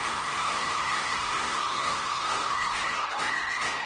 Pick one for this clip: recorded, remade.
remade